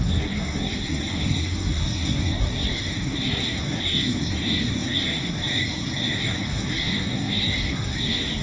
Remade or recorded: remade